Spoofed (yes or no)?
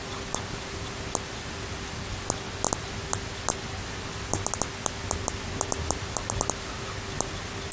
no